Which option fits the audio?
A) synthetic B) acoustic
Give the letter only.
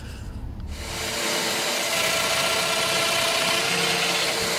B